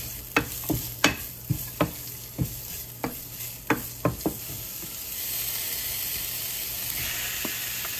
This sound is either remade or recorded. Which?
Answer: recorded